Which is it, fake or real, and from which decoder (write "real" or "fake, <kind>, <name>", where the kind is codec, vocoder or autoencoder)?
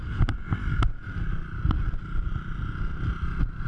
real